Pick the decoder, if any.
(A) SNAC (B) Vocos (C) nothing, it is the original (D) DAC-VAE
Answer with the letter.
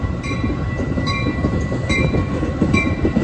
C